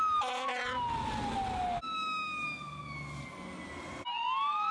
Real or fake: real